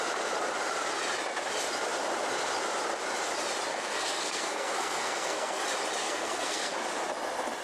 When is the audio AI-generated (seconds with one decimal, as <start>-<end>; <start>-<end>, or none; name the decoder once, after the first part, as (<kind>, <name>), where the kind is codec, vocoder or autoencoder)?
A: 3.7-5.6 (codec, SNAC); 6.0-6.8